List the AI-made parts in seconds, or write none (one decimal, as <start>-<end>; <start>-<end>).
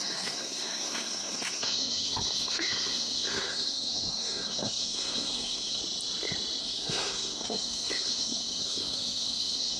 0.0-5.8; 6.6-9.8